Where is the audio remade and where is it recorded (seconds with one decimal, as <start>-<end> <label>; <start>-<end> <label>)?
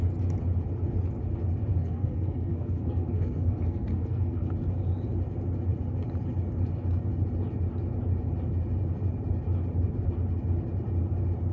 0.0-1.7 recorded; 1.7-4.5 remade; 4.5-11.5 recorded